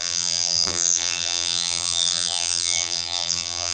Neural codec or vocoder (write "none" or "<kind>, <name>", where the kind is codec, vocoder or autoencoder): vocoder, BigVGAN v2